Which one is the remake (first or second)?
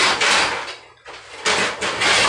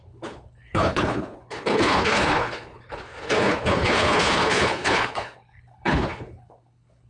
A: second